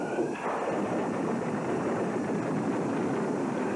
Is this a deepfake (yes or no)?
yes